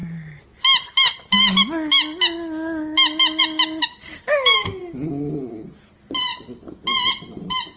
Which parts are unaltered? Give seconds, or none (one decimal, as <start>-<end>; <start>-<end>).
0.0-6.3; 7.1-7.8